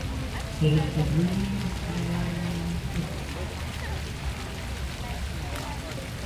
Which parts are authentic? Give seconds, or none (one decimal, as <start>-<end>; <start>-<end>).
0.0-6.3